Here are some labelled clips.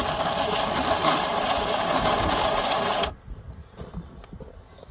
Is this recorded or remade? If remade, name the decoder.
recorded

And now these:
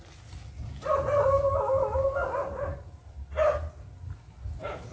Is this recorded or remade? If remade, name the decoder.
recorded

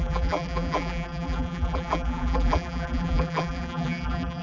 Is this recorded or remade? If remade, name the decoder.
remade, vocoder, BigVGAN v2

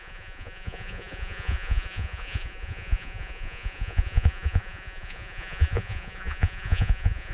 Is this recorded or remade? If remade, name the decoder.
remade, vocoder, Vocos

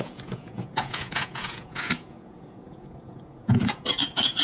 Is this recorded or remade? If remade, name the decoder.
remade, vocoder, Vocos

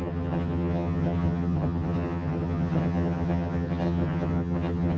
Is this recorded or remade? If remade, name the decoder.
remade, vocoder, HiFi-GAN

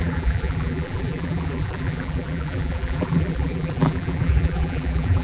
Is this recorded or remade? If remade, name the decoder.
remade, vocoder, BigVGAN v2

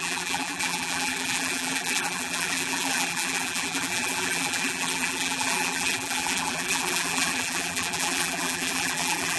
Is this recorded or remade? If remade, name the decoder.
remade, vocoder, BigVGAN v2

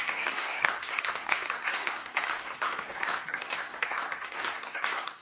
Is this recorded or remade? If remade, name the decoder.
remade, codec, SNAC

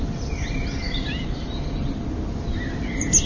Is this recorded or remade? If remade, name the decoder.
recorded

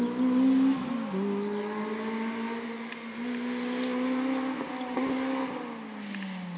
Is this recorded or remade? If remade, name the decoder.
recorded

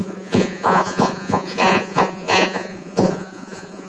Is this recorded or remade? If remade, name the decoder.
remade, vocoder, Vocos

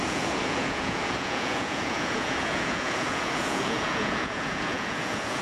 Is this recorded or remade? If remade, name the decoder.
remade, vocoder, Vocos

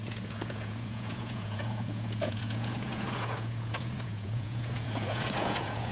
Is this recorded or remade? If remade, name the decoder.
remade, vocoder, Vocos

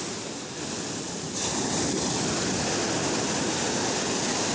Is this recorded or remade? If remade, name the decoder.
recorded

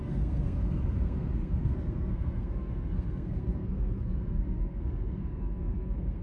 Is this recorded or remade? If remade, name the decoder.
remade, codec, SNAC